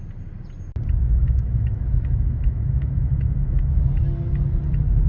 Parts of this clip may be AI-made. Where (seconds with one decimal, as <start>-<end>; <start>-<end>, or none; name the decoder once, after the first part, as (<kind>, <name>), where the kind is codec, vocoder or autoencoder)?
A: 1.2-3.9 (autoencoder, DAC-VAE)